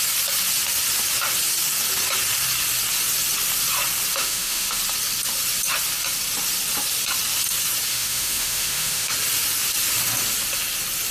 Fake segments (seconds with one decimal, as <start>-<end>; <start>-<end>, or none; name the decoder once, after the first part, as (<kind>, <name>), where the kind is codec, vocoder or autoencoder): 4.1-4.8 (autoencoder, DAC-VAE); 7.9-9.1